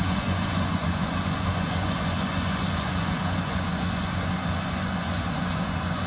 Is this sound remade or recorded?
remade